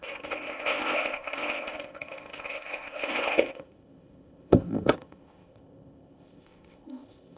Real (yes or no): no